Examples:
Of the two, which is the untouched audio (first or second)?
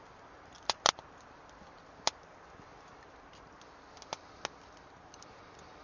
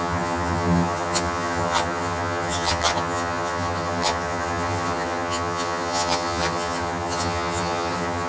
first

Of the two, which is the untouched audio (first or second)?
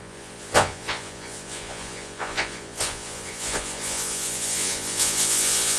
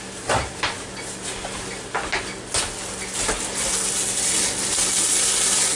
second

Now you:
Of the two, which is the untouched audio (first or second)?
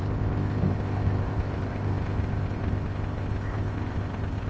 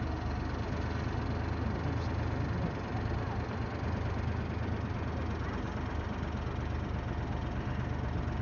second